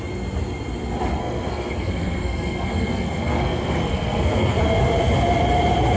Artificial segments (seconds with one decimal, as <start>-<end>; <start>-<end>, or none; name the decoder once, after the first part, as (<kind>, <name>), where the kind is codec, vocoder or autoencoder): 1.2-4.6 (codec, SNAC)